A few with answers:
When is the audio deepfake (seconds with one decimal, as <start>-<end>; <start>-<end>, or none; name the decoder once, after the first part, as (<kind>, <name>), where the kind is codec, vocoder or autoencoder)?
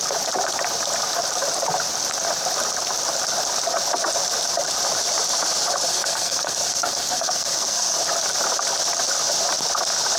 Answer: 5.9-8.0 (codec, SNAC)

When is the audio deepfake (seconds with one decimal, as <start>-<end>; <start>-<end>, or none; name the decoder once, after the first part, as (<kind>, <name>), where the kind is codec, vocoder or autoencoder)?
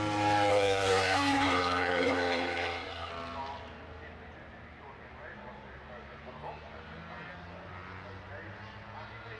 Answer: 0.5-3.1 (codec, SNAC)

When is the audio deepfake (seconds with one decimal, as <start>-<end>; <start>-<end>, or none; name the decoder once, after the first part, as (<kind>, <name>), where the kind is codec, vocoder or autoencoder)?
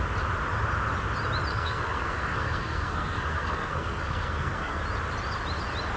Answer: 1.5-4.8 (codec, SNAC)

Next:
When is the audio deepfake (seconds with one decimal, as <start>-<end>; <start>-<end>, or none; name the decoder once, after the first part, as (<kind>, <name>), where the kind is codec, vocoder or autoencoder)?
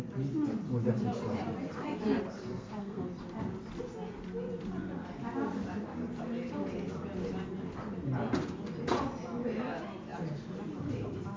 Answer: 2.5-3.0 (codec, SNAC)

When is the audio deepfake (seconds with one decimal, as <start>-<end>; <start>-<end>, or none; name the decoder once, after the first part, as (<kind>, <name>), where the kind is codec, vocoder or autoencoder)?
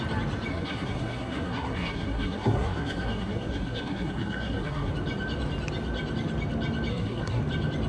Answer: 0.5-4.9 (codec, SNAC); 6.9-7.4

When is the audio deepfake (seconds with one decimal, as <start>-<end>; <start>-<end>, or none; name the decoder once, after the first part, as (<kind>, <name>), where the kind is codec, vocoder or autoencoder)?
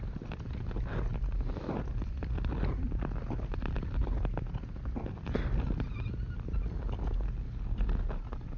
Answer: none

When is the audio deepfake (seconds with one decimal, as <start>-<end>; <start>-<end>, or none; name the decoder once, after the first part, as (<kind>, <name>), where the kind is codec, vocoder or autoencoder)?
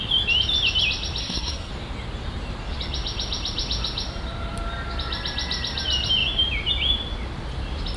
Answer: 1.2-1.7 (codec, SNAC)